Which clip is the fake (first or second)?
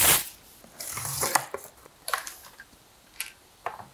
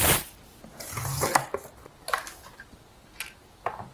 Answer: first